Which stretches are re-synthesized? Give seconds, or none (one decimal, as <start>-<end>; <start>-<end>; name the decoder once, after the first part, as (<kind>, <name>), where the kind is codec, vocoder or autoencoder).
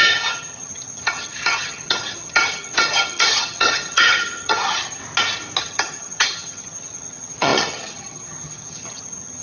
0.0-5.0 (vocoder, HiFi-GAN); 5.6-9.4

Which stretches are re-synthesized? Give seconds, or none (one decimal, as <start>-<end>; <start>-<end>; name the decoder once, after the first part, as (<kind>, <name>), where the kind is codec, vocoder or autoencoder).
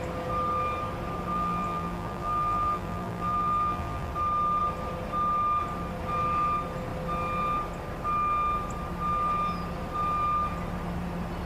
1.3-4.1 (vocoder, BigVGAN v2)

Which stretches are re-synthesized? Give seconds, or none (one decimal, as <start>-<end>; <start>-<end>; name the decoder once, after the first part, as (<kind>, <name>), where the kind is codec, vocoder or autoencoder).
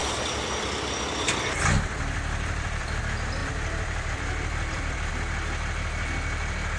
0.0-3.0 (vocoder, BigVGAN v2); 3.4-5.1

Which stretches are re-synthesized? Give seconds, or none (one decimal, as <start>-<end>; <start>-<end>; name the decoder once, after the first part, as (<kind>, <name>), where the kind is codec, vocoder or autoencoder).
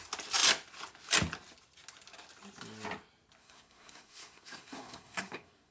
3.4-5.7 (codec, SNAC)